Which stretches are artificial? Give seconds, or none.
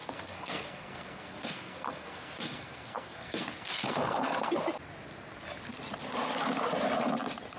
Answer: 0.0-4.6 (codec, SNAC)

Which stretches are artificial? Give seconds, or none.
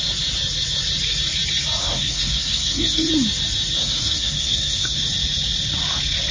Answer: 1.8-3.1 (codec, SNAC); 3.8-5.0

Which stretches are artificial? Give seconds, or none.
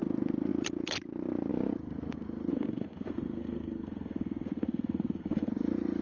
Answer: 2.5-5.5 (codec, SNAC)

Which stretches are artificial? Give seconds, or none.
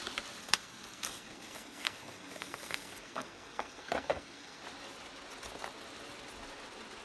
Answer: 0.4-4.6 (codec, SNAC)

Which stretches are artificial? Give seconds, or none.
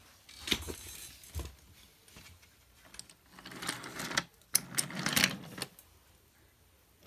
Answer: none